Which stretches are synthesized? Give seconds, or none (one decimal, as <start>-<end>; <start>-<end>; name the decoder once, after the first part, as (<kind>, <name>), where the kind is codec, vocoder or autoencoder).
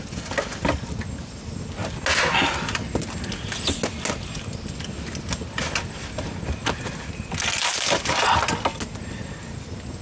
none